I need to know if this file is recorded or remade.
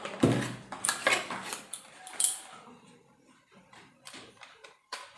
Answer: remade